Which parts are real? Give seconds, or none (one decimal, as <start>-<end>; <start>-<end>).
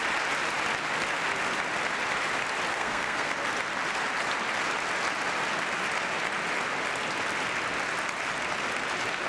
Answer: 0.0-2.7; 3.3-9.3